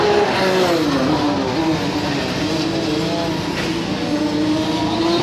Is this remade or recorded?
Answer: recorded